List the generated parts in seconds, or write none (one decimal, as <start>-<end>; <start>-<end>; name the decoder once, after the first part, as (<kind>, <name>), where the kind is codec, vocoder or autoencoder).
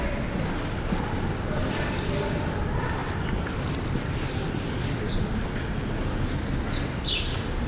none